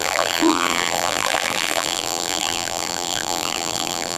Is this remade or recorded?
remade